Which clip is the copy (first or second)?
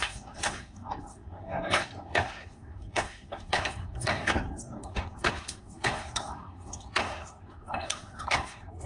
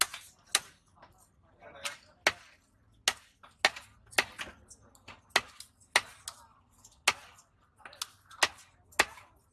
first